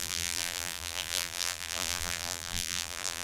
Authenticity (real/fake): fake